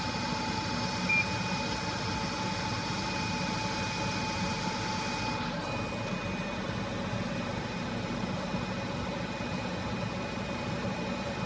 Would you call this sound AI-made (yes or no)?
no